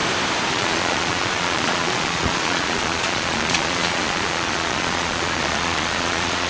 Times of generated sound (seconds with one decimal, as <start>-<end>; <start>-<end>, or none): 0.5-6.5